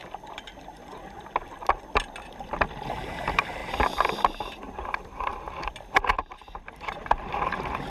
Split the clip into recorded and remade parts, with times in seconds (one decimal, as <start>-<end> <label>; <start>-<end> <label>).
0.0-3.0 recorded; 3.0-5.3 remade; 5.3-6.1 recorded; 6.1-7.9 remade